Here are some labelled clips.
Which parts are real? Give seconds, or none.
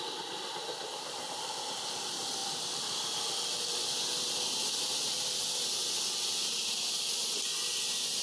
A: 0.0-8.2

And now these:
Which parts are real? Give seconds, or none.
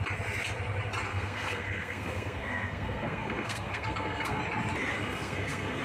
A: 0.0-1.1; 4.4-4.9